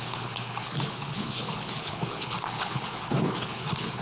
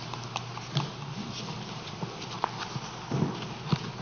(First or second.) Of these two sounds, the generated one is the first